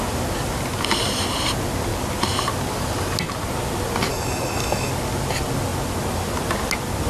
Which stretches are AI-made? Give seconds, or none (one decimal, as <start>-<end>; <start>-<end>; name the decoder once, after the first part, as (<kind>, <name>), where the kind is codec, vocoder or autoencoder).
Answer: 4.1-4.9 (codec, DAC)